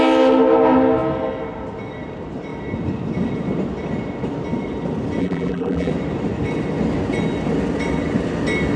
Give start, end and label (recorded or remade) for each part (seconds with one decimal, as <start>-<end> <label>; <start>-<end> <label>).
0.0-5.2 recorded; 5.2-5.9 remade; 5.9-8.8 recorded